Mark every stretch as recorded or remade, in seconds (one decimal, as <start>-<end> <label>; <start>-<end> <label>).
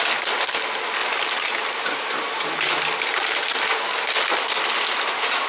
0.0-1.0 recorded; 1.0-3.9 remade; 3.9-5.5 recorded